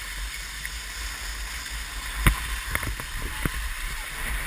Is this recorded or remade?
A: recorded